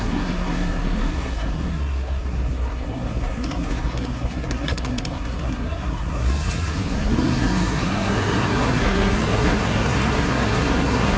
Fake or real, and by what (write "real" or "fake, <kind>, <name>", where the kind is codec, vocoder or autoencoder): fake, codec, SNAC